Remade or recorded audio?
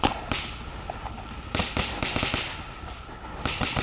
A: recorded